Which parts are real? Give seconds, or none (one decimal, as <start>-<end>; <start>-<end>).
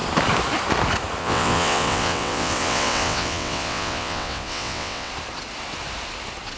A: 0.0-1.2; 5.1-6.6